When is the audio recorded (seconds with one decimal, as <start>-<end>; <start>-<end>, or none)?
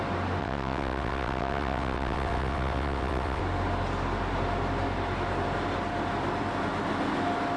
0.0-0.4; 3.4-7.6